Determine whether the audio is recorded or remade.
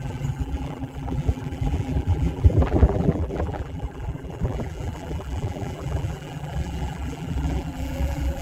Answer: remade